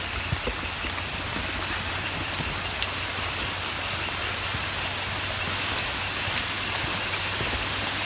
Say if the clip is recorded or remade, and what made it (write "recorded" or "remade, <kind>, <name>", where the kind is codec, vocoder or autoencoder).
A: recorded